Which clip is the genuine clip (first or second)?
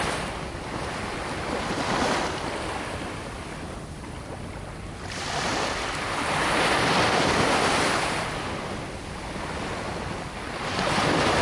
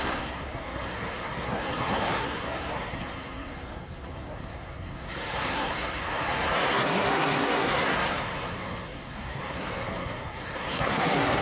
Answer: first